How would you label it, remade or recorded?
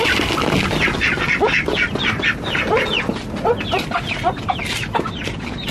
recorded